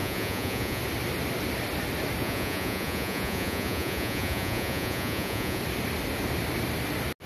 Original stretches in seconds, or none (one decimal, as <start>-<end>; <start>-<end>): 0.8-2.2; 5.6-7.3